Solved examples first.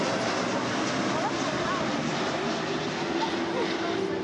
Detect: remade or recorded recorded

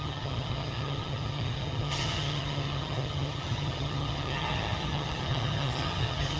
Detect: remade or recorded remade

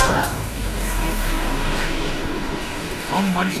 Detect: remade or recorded remade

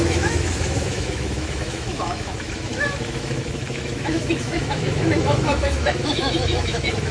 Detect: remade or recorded remade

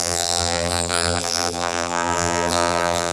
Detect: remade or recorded remade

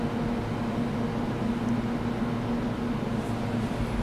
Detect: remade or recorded recorded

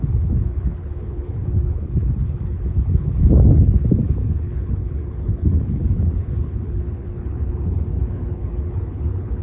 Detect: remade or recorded remade